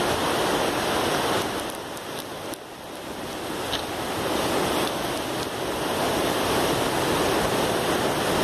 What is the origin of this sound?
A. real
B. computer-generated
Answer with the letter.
A